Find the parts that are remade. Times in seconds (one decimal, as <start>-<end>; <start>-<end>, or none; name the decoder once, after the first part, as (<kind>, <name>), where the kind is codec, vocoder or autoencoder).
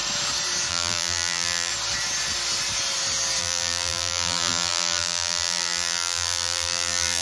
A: 0.7-1.7 (vocoder, BigVGAN v2); 3.4-7.2